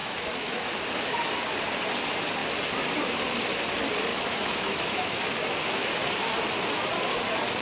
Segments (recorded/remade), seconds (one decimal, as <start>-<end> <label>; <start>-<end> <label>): 0.0-0.7 remade; 0.7-4.1 recorded; 4.1-5.2 remade; 5.2-7.6 recorded